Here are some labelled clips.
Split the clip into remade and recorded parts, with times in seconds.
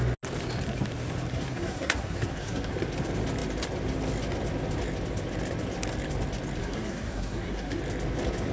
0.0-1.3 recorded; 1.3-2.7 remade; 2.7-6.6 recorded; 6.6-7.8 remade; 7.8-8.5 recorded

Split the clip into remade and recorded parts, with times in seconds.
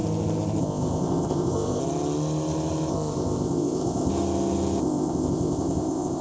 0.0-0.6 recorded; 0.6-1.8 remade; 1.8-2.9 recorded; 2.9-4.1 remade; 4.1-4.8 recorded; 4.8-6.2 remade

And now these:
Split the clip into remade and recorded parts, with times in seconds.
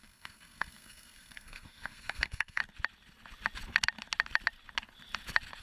0.0-2.6 remade; 2.6-5.6 recorded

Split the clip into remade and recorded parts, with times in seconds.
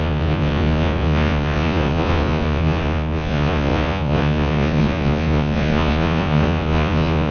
0.0-7.3 remade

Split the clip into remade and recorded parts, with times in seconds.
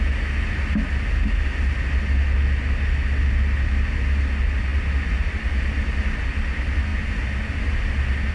0.0-8.3 recorded